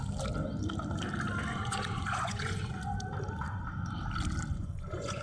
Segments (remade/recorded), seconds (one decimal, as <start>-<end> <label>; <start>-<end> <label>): 0.0-1.5 recorded; 1.5-2.8 remade; 2.8-4.5 recorded; 4.5-5.2 remade